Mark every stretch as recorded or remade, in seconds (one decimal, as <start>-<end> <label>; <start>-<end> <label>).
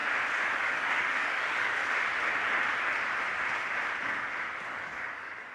0.0-0.6 recorded; 0.6-1.8 remade; 1.8-4.7 recorded; 4.7-5.5 remade